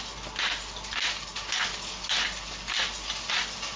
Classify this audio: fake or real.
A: real